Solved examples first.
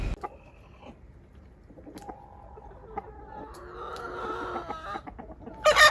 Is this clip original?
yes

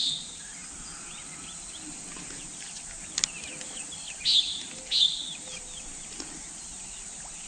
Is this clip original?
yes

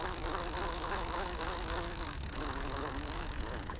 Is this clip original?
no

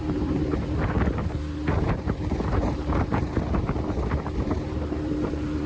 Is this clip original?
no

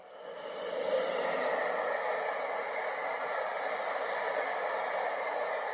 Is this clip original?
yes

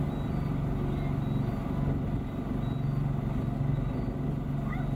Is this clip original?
yes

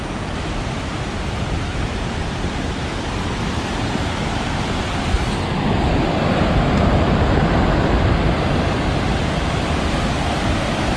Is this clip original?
yes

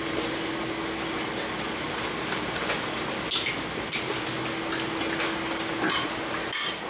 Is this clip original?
yes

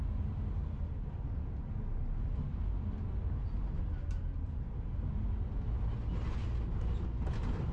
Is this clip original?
yes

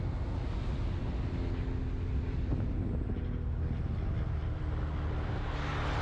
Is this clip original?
yes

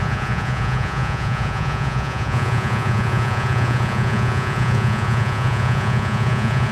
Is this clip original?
no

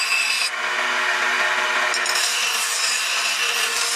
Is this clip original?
yes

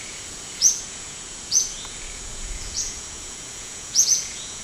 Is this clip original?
no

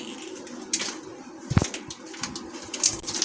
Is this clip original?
yes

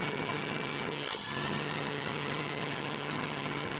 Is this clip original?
no